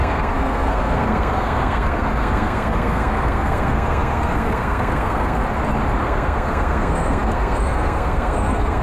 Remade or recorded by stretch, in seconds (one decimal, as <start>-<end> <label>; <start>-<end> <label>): 0.0-5.4 remade; 5.4-6.0 recorded; 6.0-8.8 remade